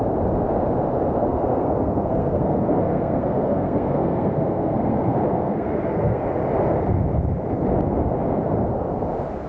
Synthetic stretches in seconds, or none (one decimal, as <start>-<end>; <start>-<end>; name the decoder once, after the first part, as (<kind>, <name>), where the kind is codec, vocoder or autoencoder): 1.2-6.2 (codec, SNAC)